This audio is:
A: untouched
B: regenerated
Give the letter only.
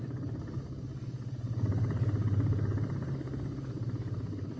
B